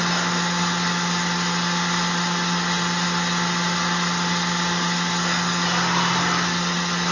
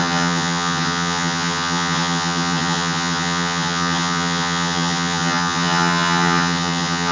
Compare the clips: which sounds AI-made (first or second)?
second